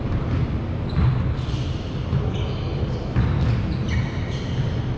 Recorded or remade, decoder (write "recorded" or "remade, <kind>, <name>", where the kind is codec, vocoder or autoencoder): recorded